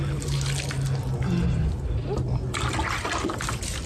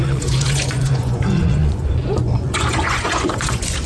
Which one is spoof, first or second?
second